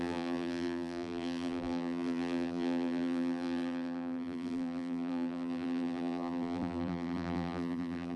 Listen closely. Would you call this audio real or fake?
fake